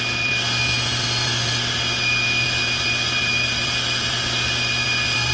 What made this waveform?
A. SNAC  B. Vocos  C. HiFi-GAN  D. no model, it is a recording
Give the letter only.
D